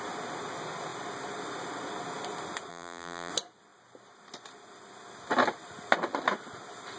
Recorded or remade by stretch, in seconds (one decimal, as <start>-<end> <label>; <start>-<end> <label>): 0.0-2.7 recorded; 2.7-3.3 remade; 3.3-7.0 recorded